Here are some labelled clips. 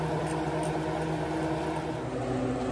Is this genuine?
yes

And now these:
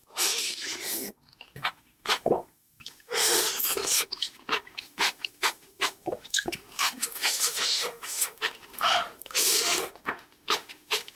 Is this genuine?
no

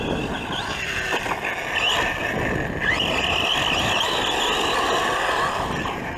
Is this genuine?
yes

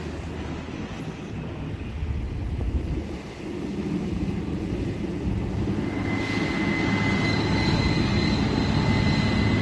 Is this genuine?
yes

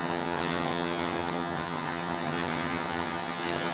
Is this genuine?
no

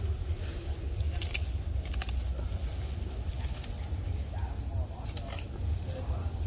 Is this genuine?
yes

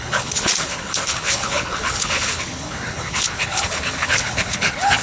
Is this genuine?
no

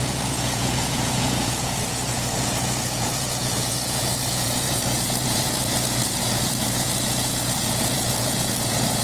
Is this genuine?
no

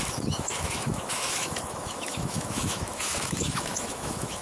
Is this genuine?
no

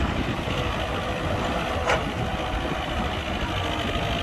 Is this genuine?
yes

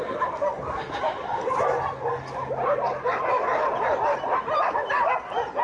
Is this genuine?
yes